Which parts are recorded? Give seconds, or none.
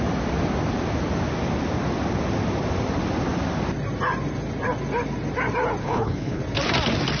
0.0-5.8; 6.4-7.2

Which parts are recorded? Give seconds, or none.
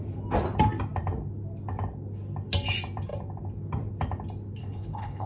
0.0-4.6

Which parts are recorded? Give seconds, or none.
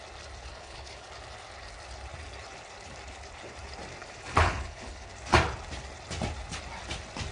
0.0-0.5; 1.1-4.0; 5.1-7.3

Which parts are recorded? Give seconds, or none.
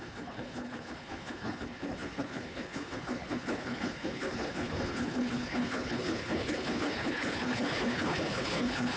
none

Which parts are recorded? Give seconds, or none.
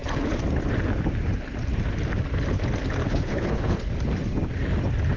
0.0-3.0; 3.9-5.2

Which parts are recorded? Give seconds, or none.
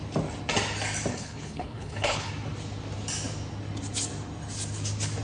0.0-1.1; 2.3-5.2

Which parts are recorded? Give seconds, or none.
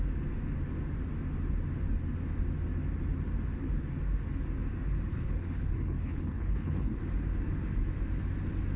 0.0-5.1; 7.0-8.8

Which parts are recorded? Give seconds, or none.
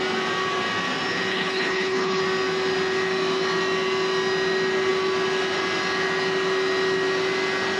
0.0-1.3; 2.2-7.8